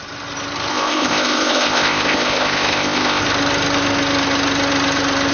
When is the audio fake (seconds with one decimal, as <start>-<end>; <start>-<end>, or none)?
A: 0.7-3.2